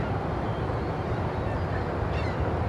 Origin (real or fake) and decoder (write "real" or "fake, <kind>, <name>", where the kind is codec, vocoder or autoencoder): real